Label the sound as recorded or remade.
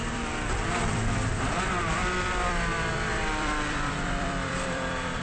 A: remade